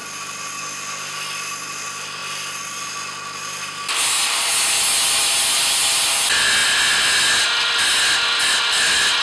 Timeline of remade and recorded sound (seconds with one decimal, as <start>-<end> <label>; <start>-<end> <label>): 0.0-9.2 recorded